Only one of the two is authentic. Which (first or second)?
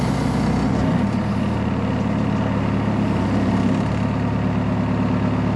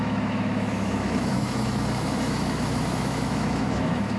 first